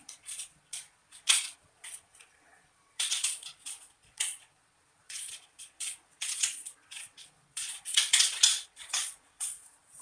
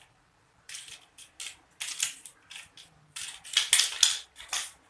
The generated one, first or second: first